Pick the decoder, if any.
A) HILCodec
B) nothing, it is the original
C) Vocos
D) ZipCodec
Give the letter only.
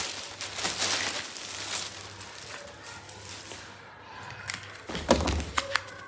B